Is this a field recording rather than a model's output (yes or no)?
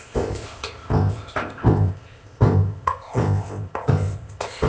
no